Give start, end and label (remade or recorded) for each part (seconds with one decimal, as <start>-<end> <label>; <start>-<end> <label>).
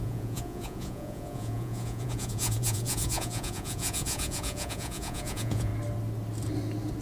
0.0-5.7 remade; 5.7-7.0 recorded